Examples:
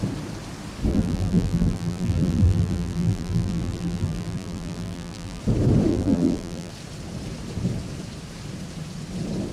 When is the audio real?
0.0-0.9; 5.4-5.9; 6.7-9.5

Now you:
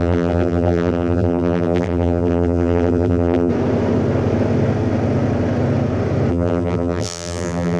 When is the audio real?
3.5-6.3

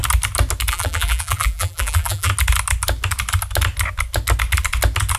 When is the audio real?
0.0-0.7; 2.3-5.2

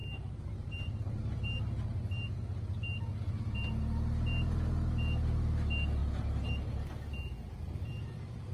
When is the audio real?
2.0-6.0; 6.5-8.5

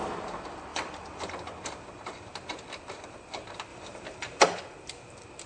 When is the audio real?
0.0-0.7; 1.3-3.7; 4.4-5.5

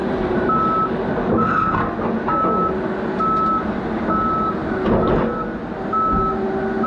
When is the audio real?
0.5-6.9